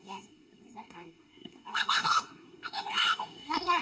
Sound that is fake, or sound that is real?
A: fake